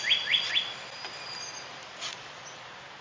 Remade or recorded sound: remade